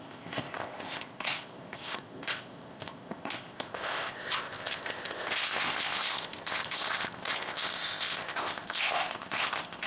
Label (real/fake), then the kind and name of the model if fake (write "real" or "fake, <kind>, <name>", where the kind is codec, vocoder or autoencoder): fake, codec, ZipCodec